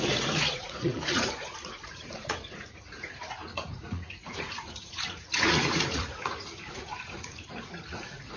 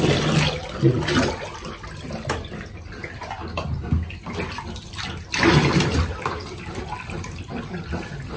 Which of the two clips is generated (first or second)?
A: first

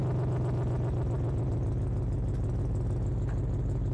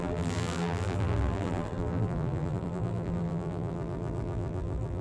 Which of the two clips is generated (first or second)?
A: second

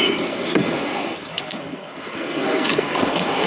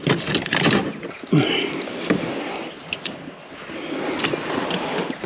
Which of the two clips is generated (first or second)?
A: first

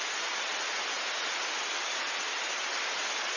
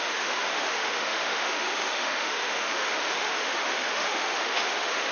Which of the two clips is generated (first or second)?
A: second